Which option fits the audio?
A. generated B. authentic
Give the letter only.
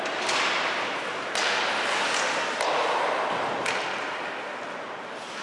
B